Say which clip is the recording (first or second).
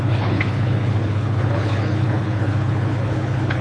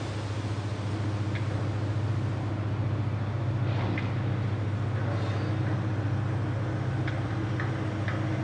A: second